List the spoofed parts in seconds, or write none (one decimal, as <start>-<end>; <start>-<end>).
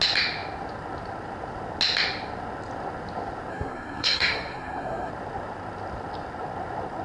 3.5-5.1